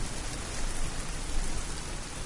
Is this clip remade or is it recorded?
recorded